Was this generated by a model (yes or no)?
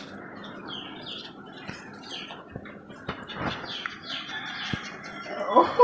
no